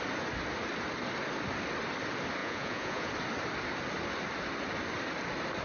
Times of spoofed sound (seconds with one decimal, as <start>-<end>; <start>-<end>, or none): 2.4-3.1